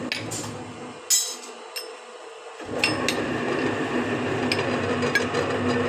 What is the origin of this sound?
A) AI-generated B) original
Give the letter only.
B